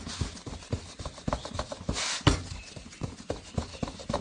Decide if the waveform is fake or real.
real